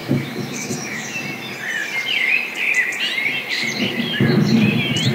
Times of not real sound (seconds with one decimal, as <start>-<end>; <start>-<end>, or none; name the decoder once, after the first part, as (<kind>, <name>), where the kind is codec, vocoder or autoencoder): 0.0-1.2 (autoencoder, DAC-VAE)